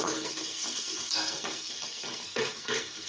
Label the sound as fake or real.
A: fake